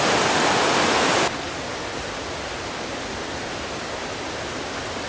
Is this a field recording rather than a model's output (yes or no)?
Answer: yes